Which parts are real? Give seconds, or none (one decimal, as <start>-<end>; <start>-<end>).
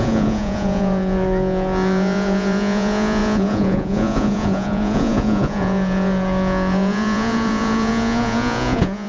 none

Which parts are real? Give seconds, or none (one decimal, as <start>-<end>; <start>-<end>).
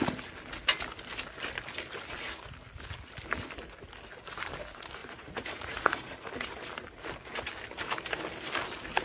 0.0-5.0; 6.3-9.0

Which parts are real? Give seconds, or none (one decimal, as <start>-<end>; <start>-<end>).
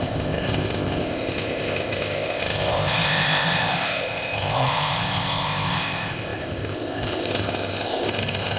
none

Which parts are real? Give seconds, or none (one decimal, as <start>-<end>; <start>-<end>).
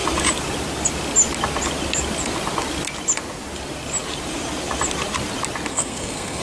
0.0-5.7